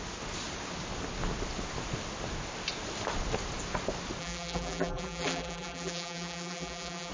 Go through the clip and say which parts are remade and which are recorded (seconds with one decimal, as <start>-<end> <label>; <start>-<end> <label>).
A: 0.0-4.2 recorded; 4.2-7.1 remade